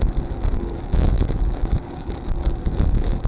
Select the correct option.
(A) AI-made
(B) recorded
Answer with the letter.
A